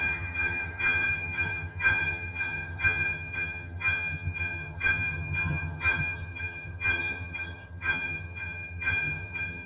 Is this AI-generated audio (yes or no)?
yes